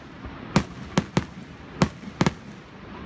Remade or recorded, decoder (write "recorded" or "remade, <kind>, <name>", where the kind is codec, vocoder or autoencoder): recorded